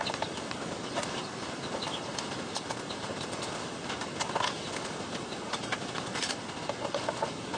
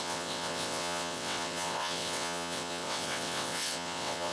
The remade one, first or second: second